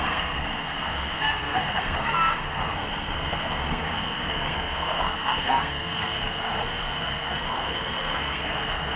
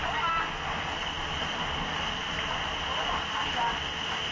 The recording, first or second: second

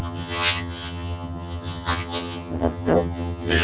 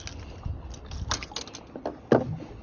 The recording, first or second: second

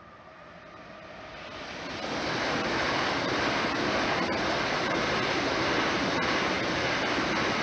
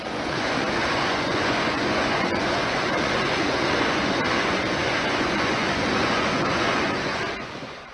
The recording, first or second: first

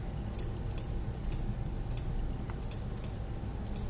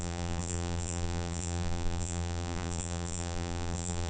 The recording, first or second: first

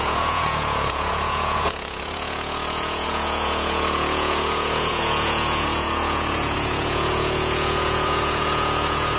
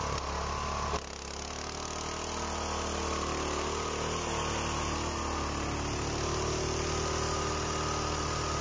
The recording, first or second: second